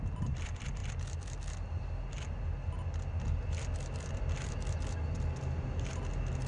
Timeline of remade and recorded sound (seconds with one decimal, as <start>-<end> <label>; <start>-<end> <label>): 0.0-6.5 recorded